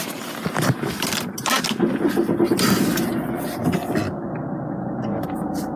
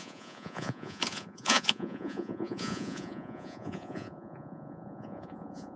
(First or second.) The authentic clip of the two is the first